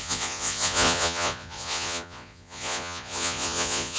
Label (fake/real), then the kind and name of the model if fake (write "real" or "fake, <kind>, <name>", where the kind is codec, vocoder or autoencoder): fake, vocoder, Vocos